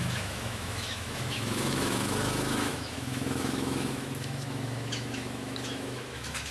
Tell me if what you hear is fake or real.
fake